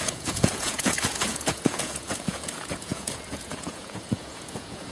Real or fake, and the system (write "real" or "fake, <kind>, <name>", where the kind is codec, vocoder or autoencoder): fake, vocoder, Vocos